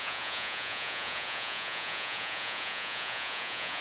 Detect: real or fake fake